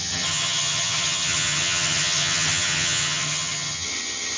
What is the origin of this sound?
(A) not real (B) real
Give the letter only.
A